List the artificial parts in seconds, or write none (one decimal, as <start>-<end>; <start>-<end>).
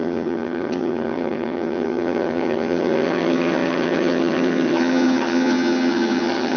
0.0-6.6